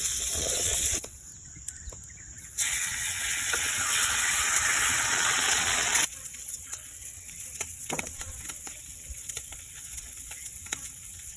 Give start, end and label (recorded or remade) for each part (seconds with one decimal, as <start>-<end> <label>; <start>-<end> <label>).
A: 0.0-1.3 remade; 1.3-2.4 recorded; 2.4-11.4 remade